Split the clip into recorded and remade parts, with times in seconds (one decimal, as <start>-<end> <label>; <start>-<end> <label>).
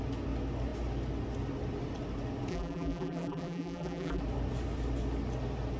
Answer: 0.0-2.5 recorded; 2.5-4.2 remade; 4.2-5.8 recorded